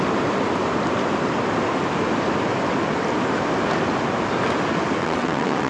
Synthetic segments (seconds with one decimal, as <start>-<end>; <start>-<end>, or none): 5.0-5.7